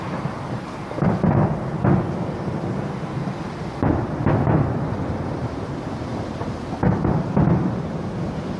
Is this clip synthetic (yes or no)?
no